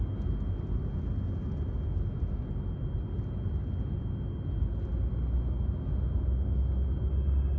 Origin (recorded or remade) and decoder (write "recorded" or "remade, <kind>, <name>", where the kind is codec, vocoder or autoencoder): recorded